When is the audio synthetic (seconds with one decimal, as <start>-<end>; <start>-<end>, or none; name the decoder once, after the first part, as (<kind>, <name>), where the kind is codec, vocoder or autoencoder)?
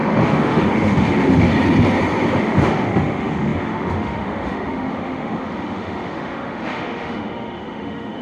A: 0.0-1.5 (autoencoder, DAC-VAE); 2.4-8.2